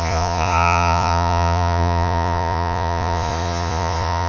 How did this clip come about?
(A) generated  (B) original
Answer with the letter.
A